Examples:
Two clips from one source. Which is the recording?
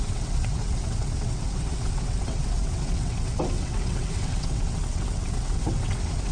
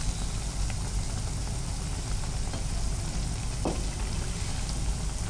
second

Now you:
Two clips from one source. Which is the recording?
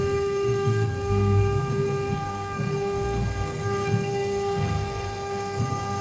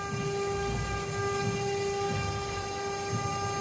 second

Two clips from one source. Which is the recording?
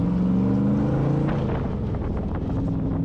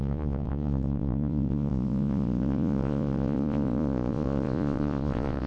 first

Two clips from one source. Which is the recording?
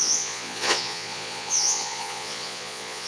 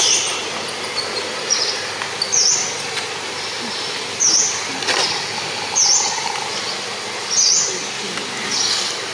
second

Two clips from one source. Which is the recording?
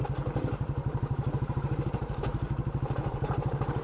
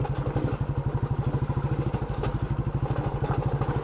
second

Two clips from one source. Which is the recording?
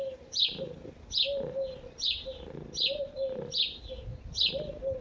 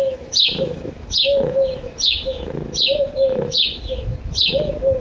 first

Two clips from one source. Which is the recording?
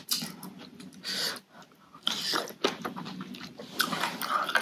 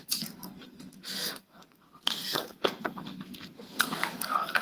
first